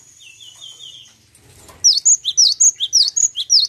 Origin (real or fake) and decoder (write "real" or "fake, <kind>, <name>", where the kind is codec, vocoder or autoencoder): real